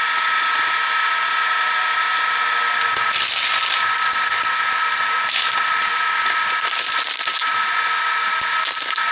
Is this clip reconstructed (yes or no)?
no